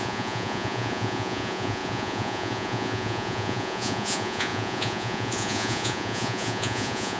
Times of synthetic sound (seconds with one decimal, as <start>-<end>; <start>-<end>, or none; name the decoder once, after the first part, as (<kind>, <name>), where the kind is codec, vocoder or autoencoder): 0.0-7.2 (vocoder, Vocos)